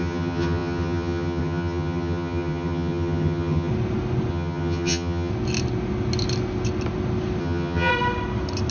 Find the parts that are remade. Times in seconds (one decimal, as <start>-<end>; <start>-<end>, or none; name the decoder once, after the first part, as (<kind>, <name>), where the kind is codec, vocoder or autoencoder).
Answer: 0.0-3.7 (vocoder, HiFi-GAN); 4.3-5.3; 7.4-7.9